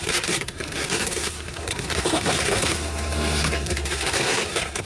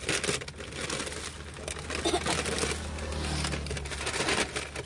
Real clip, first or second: second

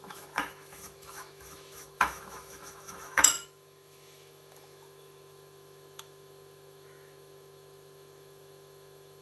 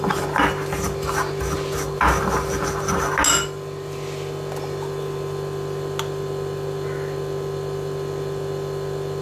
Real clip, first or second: second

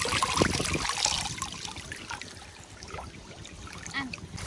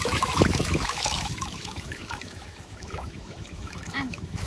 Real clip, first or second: first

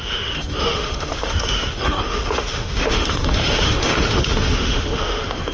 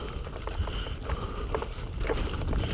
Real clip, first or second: second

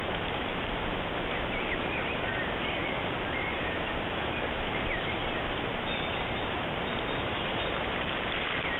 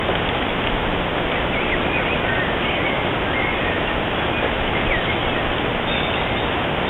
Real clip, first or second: second